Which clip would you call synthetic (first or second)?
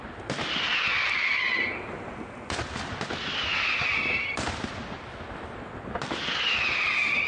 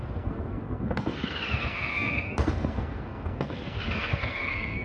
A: second